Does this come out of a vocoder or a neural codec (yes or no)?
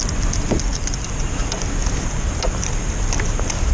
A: no